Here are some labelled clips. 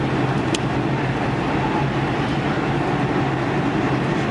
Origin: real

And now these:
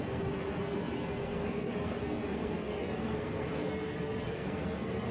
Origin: fake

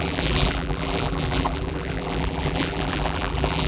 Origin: fake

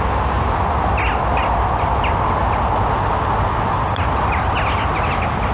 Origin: real